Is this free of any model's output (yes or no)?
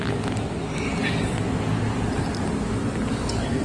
yes